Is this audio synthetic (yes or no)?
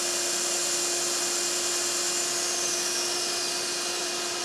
no